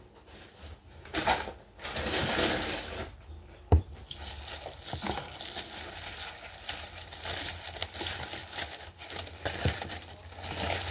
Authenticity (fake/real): real